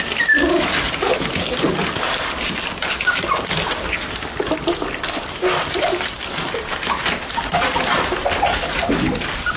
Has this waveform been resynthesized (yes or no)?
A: no